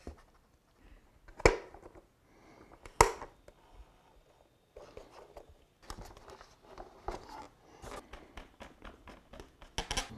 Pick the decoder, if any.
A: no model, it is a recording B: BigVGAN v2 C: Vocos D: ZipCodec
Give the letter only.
A